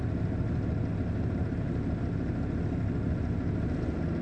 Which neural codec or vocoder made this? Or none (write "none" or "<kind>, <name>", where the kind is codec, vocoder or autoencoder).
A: none